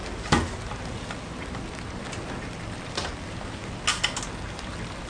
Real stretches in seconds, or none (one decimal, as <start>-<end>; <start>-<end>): 0.0-5.1